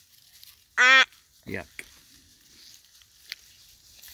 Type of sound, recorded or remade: recorded